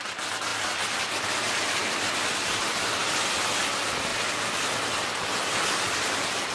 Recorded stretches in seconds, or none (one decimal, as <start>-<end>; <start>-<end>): 0.0-6.5